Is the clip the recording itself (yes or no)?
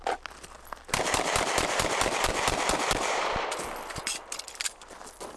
no